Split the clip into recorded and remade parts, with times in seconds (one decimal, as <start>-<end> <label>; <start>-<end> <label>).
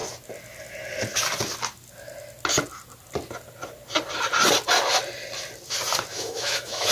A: 0.0-6.1 recorded; 6.1-6.9 remade